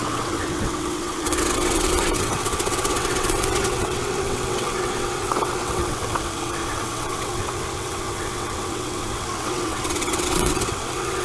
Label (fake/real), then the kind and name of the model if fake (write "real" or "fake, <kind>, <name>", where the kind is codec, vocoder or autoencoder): fake, vocoder, WaveNeXt